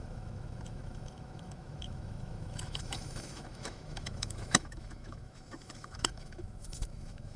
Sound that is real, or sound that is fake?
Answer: fake